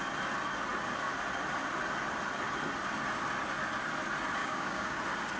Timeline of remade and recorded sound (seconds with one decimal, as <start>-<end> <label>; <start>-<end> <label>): 0.0-4.4 recorded; 4.4-5.0 remade; 5.0-5.4 recorded